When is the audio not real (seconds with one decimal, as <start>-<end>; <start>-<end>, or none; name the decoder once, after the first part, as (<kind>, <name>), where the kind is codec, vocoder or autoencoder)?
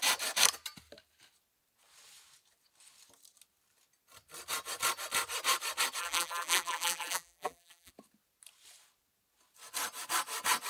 6.0-7.9 (vocoder, BigVGAN v2)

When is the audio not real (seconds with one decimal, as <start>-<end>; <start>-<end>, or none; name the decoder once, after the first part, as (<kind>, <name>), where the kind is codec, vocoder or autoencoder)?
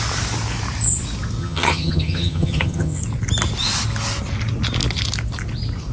1.4-3.0 (vocoder, HiFi-GAN)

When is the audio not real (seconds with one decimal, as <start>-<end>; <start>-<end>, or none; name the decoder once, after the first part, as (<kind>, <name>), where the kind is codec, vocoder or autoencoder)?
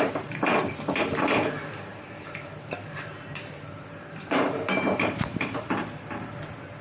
1.9-6.0 (vocoder, BigVGAN v2)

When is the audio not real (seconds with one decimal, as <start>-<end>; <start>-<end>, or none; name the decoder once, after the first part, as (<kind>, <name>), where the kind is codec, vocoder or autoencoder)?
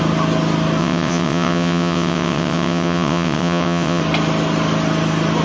0.8-4.0 (vocoder, WaveNeXt)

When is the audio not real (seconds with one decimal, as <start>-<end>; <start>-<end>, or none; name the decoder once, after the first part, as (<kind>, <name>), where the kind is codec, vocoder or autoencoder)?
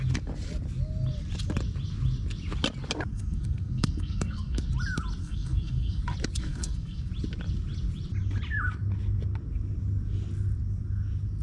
3.1-4.7 (codec, SNAC); 5.2-6.0; 6.4-7.1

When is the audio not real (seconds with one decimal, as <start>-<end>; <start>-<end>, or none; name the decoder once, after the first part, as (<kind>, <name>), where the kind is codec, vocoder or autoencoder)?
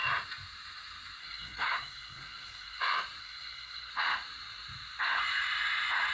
1.2-2.8 (codec, SNAC); 3.2-3.9